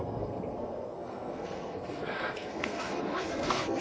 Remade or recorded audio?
remade